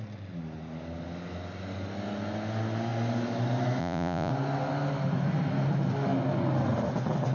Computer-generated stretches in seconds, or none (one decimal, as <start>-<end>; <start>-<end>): 3.8-4.3